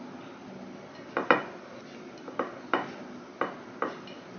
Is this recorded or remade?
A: recorded